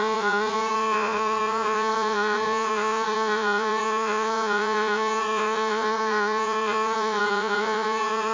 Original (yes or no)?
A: no